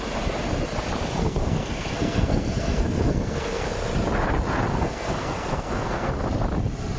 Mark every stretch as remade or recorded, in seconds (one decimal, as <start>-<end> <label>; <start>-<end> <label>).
0.0-1.2 recorded; 1.2-3.7 remade; 3.7-4.7 recorded; 4.7-6.1 remade; 6.1-7.0 recorded